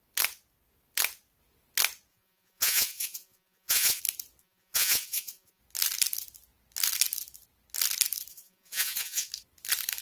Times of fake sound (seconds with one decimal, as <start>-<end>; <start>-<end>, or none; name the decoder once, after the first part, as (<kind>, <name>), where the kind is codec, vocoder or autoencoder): 2.1-4.0 (vocoder, Vocos); 4.4-5.6; 8.3-9.3